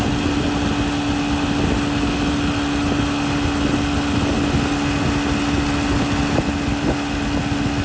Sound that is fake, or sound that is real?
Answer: real